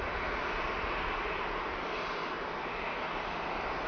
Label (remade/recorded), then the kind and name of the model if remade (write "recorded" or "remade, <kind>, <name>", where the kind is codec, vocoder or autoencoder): recorded